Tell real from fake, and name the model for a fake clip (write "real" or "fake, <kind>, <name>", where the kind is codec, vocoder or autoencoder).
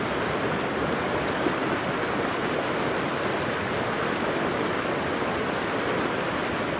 real